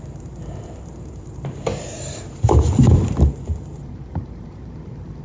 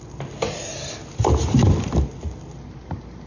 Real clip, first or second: second